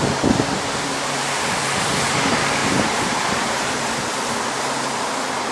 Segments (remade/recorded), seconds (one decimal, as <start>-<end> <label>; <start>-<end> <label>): 0.0-2.6 recorded; 2.6-3.8 remade; 3.8-5.5 recorded